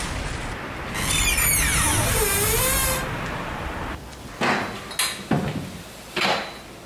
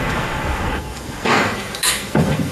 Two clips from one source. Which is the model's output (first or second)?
second